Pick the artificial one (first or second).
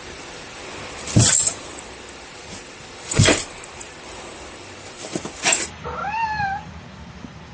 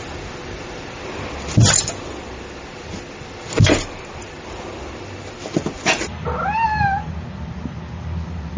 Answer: first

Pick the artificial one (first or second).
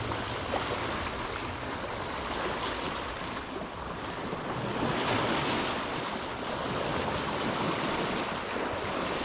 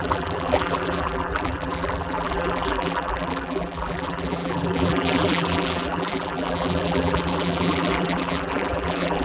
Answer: second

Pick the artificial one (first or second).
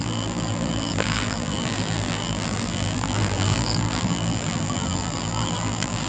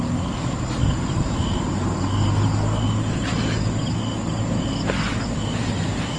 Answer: first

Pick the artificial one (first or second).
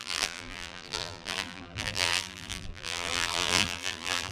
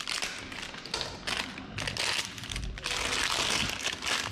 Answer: first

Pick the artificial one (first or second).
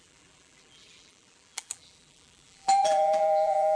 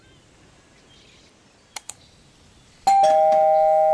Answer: first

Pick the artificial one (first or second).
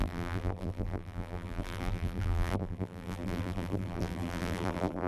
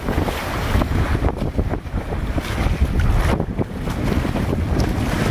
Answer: first